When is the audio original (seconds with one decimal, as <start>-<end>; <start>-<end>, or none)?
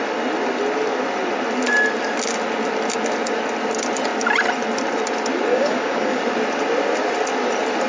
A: 0.0-5.5; 6.2-7.9